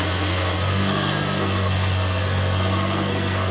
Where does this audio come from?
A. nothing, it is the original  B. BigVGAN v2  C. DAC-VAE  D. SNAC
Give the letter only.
D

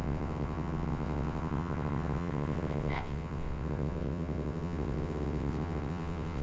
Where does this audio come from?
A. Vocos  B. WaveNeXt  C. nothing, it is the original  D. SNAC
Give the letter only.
B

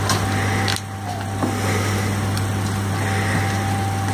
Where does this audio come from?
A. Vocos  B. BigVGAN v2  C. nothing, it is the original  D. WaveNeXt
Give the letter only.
C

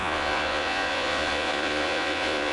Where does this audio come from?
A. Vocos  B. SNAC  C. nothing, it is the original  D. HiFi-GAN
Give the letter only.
A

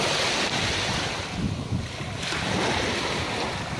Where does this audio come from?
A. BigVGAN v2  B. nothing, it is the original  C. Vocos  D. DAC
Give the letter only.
B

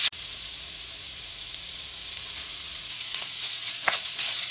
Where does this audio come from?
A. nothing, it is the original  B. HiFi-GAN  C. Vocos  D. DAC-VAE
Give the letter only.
C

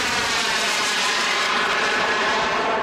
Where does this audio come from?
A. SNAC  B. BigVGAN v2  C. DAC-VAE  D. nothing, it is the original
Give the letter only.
B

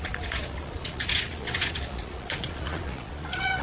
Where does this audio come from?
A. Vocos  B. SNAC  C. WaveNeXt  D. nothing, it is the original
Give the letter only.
A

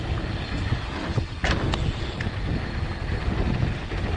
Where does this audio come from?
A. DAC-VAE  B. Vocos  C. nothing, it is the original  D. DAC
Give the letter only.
C